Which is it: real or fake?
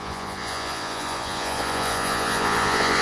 fake